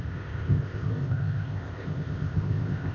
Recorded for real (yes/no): no